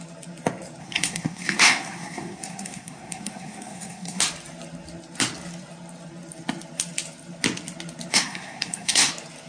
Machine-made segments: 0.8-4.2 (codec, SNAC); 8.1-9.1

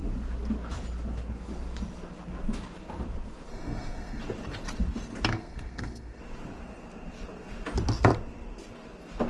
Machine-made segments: 3.5-4.2 (codec, SNAC); 5.3-6.2

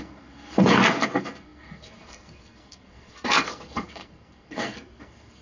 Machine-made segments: 0.0-5.4 (codec, SNAC)

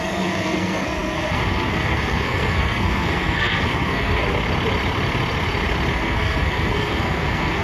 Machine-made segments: 0.0-4.2 (codec, SNAC); 5.9-7.6

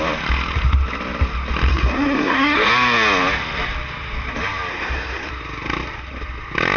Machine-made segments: 1.7-2.7 (codec, SNAC); 4.7-5.3

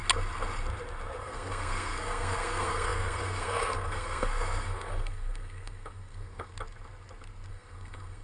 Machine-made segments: 1.2-6.5 (codec, SNAC); 7.5-8.2